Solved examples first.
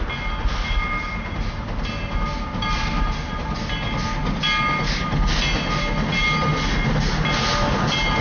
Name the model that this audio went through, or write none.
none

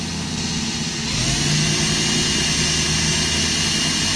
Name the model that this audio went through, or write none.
none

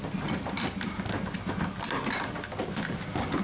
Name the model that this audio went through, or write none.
none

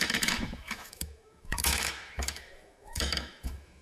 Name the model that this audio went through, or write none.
autoencoder, DAC-VAE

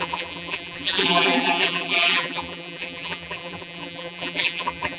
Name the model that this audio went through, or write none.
vocoder, BigVGAN v2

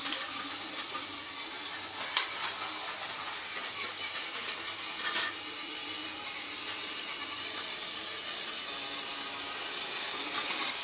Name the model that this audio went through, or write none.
none